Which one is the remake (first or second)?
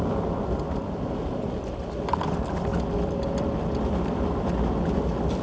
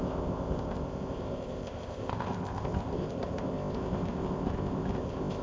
second